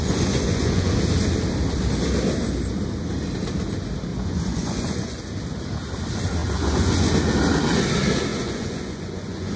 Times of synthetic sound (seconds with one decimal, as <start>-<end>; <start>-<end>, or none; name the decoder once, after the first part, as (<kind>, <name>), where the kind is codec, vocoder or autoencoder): 0.0-0.9 (vocoder, Vocos); 4.1-5.2; 6.4-7.1; 8.3-9.6